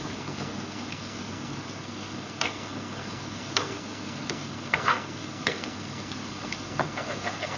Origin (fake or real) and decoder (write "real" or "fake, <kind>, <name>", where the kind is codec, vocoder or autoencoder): fake, codec, SNAC